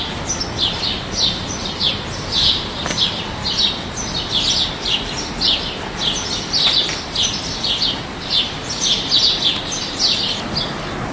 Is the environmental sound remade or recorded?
recorded